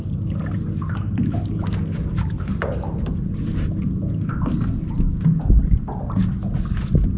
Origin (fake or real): real